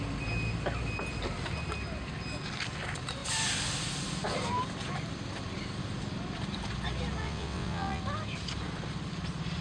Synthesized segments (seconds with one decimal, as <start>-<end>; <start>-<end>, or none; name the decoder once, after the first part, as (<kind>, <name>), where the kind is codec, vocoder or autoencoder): 7.2-8.0 (vocoder, WaveNeXt)

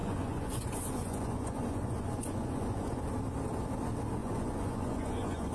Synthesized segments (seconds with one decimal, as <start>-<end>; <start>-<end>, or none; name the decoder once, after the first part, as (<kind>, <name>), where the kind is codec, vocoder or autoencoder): 0.0-3.0 (vocoder, Vocos); 4.2-5.5

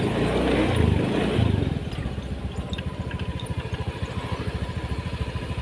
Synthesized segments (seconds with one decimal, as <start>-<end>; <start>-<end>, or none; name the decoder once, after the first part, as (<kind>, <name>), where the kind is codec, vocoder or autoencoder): none

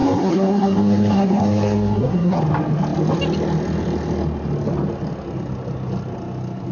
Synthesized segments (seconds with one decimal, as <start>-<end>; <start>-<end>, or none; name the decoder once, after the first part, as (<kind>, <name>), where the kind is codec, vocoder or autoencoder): 0.0-2.4 (codec, SNAC)

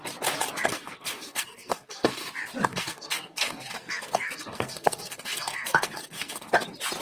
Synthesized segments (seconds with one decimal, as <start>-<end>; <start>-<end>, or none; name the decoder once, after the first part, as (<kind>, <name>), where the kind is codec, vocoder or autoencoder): 0.7-2.3 (codec, SNAC); 2.7-6.5